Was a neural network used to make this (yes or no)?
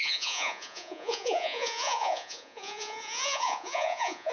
yes